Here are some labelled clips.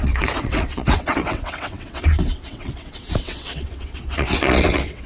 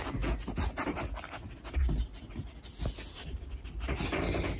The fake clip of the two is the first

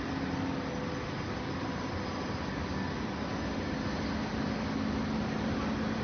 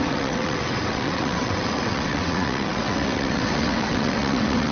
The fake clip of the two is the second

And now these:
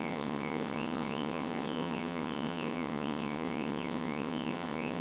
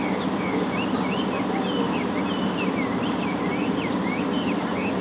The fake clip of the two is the first